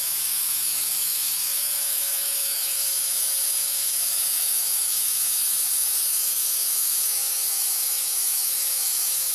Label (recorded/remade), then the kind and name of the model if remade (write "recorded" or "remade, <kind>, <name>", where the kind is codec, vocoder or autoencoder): remade, autoencoder, DAC-VAE